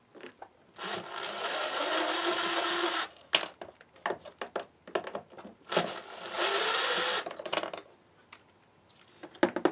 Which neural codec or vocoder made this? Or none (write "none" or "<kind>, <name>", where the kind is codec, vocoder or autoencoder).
none